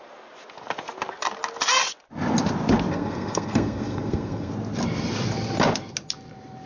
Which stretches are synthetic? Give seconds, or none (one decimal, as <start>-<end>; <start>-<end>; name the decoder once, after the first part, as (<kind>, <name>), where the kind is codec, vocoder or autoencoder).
2.9-4.5 (codec, SNAC)